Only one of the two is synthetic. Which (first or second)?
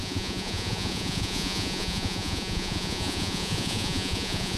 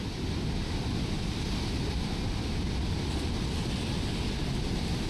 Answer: first